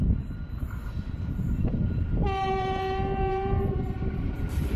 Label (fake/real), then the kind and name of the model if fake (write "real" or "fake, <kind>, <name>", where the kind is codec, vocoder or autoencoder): fake, vocoder, BigVGAN v2